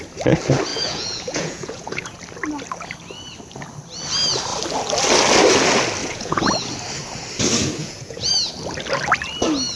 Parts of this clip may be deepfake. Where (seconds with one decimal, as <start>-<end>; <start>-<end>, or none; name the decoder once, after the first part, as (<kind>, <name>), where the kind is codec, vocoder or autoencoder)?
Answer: 0.7-2.2 (vocoder, Vocos); 6.0-6.5; 7.8-8.3